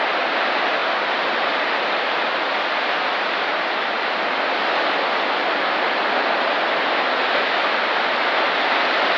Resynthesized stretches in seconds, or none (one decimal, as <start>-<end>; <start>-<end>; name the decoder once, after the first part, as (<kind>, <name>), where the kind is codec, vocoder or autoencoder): none